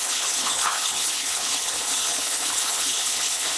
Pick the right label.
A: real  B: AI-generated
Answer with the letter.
B